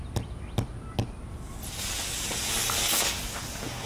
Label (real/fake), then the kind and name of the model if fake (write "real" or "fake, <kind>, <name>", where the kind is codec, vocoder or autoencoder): real